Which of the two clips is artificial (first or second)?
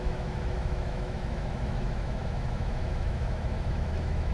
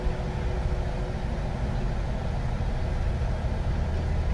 first